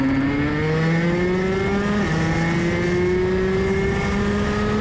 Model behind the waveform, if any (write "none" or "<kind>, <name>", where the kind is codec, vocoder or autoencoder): none